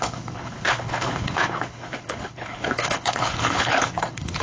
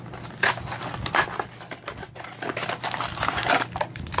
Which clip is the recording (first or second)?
second